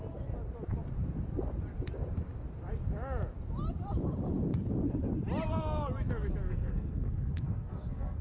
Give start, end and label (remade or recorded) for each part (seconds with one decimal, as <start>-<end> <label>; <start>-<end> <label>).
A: 0.0-6.5 recorded; 6.5-8.2 remade